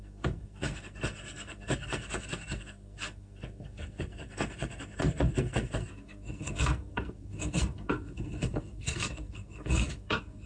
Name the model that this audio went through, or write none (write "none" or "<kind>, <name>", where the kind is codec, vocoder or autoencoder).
codec, SNAC